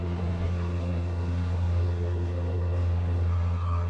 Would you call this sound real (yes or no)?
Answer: no